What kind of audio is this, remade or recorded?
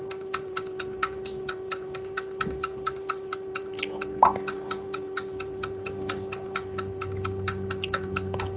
recorded